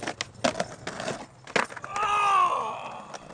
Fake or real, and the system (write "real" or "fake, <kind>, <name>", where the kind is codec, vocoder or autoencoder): real